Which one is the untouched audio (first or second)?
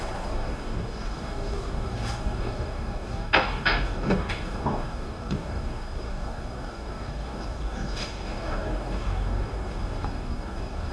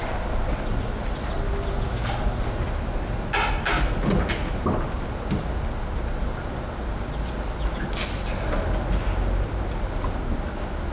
second